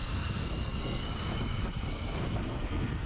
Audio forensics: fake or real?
fake